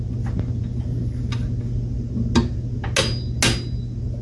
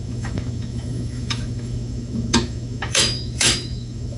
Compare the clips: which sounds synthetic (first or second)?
second